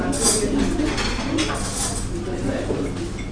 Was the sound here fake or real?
real